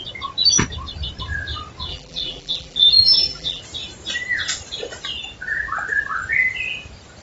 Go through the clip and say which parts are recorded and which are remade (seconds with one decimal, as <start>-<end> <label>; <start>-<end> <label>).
0.0-1.9 recorded; 1.9-3.6 remade; 3.6-7.2 recorded